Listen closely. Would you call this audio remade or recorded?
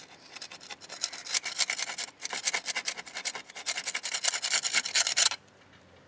recorded